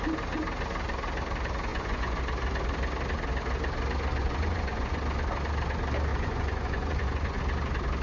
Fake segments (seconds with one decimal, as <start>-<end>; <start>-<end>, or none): 1.7-2.2; 4.2-5.0; 6.1-7.4